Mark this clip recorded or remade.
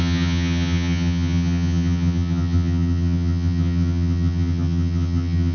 remade